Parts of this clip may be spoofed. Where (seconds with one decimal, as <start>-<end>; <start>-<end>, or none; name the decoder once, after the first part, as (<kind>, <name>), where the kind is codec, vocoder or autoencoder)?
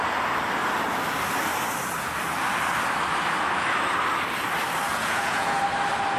4.9-5.6 (vocoder, Vocos)